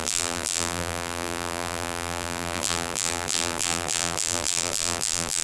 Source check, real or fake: fake